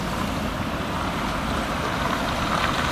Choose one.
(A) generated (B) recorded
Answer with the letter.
B